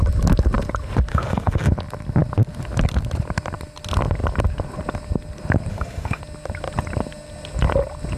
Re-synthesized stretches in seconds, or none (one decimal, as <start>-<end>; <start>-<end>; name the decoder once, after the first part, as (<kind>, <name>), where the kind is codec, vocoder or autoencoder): 1.1-1.7 (autoencoder, DAC-VAE); 5.7-6.2